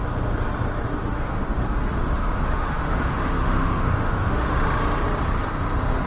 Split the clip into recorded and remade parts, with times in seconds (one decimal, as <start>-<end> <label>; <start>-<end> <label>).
0.0-0.9 recorded; 0.9-4.6 remade; 4.6-6.1 recorded